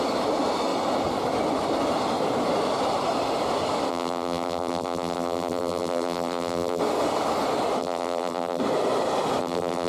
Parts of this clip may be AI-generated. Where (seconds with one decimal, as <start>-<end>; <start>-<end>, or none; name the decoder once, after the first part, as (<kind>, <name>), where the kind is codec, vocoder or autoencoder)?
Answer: 3.9-6.8 (vocoder, BigVGAN v2); 7.8-8.6; 9.4-9.9